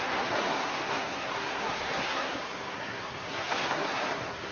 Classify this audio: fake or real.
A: fake